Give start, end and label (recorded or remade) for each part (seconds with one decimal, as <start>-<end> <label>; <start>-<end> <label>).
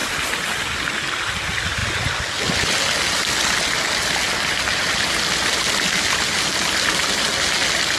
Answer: 0.0-8.0 recorded